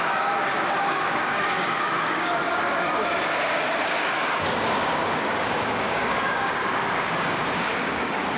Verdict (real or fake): fake